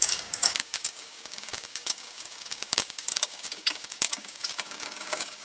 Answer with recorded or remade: remade